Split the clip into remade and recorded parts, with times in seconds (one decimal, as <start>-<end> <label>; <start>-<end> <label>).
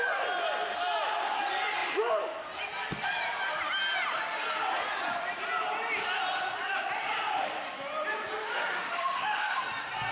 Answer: 0.0-8.4 recorded; 8.4-9.6 remade; 9.6-10.1 recorded